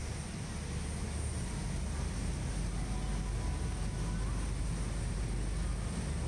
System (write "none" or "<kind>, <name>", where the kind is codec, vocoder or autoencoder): none